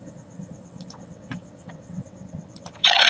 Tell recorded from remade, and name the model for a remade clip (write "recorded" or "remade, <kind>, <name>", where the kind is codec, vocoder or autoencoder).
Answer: remade, vocoder, WaveNeXt